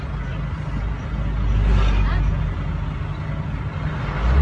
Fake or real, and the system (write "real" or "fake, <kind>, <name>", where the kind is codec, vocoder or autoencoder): real